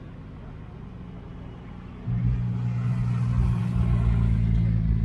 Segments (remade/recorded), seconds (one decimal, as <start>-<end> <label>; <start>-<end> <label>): 0.0-5.0 recorded